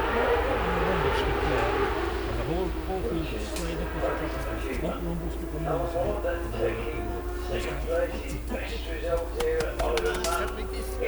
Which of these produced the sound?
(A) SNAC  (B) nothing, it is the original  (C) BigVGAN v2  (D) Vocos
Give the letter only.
B